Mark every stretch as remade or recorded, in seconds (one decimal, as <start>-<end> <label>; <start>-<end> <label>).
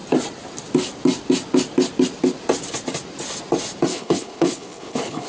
0.0-3.9 recorded; 3.9-5.3 remade